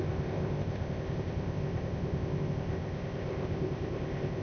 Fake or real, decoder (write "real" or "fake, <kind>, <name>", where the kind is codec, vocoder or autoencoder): fake, codec, ZipCodec